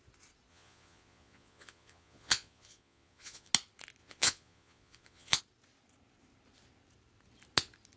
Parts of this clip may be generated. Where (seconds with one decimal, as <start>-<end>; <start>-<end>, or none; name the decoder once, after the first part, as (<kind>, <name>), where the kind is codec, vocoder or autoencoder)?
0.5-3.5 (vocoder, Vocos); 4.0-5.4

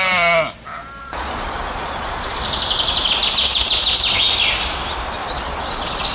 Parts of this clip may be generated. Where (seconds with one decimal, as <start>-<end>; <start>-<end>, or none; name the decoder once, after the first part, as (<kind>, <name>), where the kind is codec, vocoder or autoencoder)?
1.0-2.4 (vocoder, Vocos); 5.2-6.1

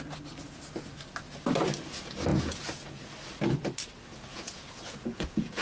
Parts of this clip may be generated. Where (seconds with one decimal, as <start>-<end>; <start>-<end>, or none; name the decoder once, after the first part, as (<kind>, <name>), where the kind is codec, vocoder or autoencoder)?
2.3-3.1 (vocoder, Vocos); 4.3-5.6

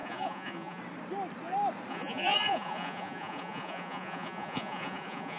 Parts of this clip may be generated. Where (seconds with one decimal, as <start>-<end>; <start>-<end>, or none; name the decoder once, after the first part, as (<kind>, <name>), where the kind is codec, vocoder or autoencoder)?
0.0-0.8 (vocoder, Vocos); 1.9-5.4

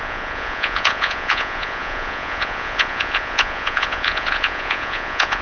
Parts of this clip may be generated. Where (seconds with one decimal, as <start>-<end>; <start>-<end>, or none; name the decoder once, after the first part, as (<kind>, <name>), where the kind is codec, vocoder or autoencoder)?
0.0-5.4 (vocoder, Vocos)

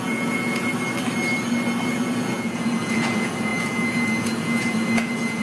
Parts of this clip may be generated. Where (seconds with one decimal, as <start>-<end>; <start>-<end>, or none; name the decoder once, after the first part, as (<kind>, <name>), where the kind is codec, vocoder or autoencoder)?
0.0-0.7 (vocoder, Vocos); 1.8-5.4

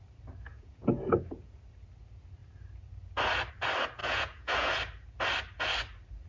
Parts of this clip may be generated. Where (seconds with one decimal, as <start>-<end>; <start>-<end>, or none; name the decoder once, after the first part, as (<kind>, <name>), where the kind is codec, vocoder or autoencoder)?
0.5-1.6 (vocoder, Vocos); 4.0-4.7

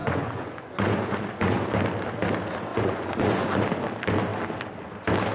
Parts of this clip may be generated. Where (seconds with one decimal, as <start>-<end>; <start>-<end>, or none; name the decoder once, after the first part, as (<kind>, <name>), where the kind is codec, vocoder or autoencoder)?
0.0-1.6 (vocoder, Vocos); 2.7-3.6